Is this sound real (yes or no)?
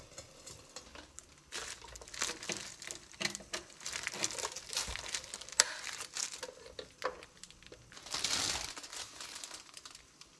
yes